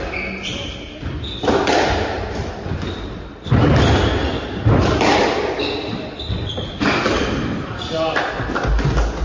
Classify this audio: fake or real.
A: real